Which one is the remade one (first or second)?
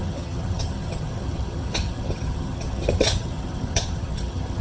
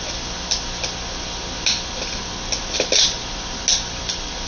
first